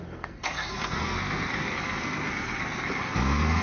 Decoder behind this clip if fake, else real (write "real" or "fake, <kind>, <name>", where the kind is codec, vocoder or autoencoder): fake, codec, SNAC